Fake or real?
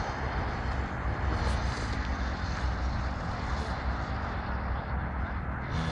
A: real